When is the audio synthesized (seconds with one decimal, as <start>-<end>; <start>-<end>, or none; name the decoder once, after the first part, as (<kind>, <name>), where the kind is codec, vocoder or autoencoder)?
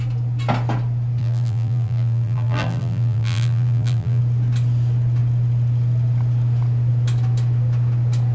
1.2-4.2 (vocoder, BigVGAN v2)